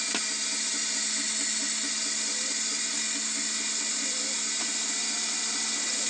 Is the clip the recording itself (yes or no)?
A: yes